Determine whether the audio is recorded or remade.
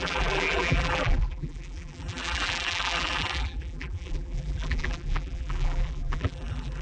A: remade